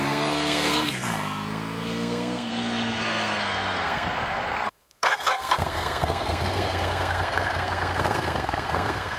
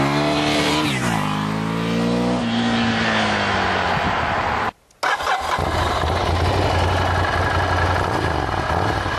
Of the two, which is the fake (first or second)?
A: first